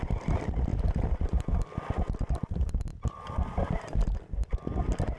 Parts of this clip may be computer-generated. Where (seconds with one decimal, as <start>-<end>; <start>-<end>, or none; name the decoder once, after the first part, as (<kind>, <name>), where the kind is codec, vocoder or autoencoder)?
none